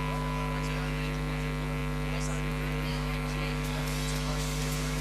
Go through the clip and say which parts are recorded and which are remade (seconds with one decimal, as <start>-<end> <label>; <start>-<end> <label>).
0.0-2.9 recorded; 2.9-3.8 remade; 3.8-4.3 recorded; 4.3-5.0 remade